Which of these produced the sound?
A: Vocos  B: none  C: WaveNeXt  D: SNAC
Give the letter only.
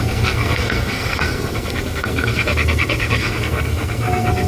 D